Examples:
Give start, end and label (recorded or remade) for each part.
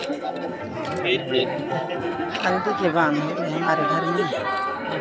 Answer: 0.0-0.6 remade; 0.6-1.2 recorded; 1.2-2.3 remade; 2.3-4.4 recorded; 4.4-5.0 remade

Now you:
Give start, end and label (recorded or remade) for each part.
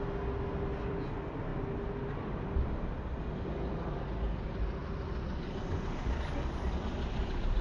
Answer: 0.0-4.8 recorded; 4.8-7.6 remade